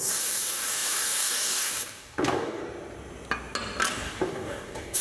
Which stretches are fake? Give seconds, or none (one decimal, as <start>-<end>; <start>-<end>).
0.0-2.6; 3.9-5.0